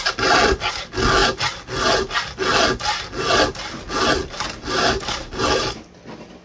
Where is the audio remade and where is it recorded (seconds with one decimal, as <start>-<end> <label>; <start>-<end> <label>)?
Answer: 0.0-6.4 recorded